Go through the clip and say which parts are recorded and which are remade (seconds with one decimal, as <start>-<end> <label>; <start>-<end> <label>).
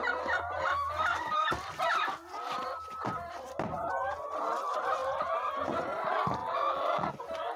0.0-6.4 recorded; 6.4-7.1 remade; 7.1-7.6 recorded